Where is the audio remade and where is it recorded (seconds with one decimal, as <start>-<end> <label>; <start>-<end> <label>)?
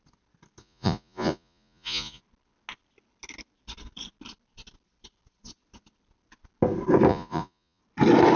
0.0-0.6 recorded; 0.6-2.2 remade; 2.2-7.1 recorded; 7.1-7.8 remade; 7.8-8.4 recorded